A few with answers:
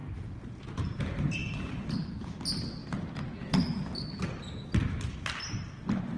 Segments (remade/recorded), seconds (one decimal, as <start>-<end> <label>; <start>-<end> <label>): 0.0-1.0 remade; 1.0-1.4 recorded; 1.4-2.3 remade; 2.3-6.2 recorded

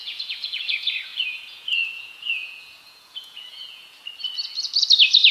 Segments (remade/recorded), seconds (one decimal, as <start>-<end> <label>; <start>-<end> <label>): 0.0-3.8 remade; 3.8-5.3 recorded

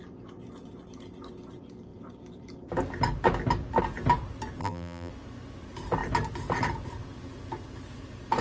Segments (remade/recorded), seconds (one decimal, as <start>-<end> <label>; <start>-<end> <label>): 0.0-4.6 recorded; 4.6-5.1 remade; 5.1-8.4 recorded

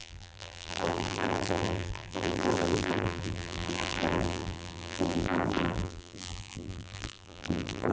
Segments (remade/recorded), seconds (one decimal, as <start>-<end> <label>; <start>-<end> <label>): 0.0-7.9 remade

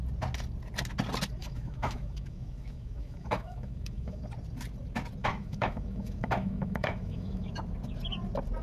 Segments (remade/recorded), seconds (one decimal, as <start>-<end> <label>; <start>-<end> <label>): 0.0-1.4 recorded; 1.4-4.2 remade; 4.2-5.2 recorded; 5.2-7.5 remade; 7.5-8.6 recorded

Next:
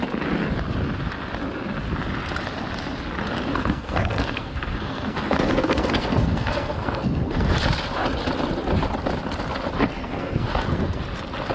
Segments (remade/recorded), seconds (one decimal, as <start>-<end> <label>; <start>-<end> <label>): 0.0-3.5 recorded; 3.5-7.5 remade; 7.5-10.0 recorded; 10.0-11.0 remade; 11.0-11.5 recorded

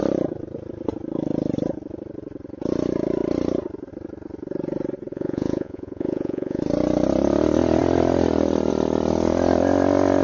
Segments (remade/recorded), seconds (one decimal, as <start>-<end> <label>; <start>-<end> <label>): 0.0-5.1 recorded; 5.1-6.6 remade; 6.6-10.2 recorded

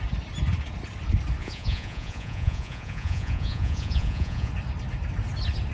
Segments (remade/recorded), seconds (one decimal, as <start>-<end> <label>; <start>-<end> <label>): 0.0-1.4 recorded; 1.4-4.5 remade; 4.5-5.7 recorded